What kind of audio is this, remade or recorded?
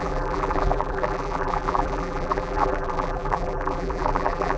remade